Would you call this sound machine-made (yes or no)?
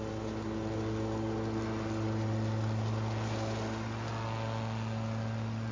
no